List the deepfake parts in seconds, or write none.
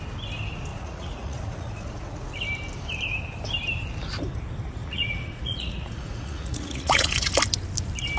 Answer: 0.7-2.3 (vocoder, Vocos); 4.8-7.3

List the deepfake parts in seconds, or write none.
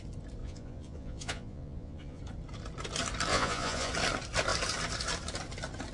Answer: 0.4-2.2 (vocoder, Vocos); 3.3-3.9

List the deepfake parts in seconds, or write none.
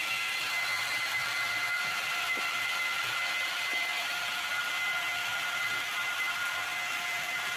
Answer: 1.2-2.7 (vocoder, BigVGAN v2)